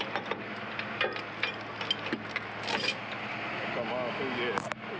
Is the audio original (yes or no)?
yes